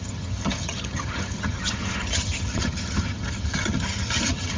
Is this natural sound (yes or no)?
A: no